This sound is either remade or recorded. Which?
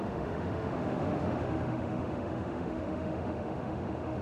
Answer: remade